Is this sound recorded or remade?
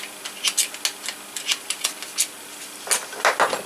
recorded